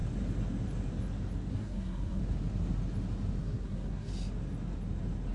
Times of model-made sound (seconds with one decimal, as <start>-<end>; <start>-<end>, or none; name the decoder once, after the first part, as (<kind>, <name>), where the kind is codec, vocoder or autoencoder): 1.5-2.2 (codec, SNAC); 3.4-4.1